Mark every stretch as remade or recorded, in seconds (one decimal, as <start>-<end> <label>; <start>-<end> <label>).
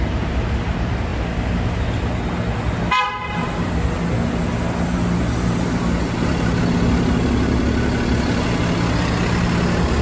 0.0-10.0 recorded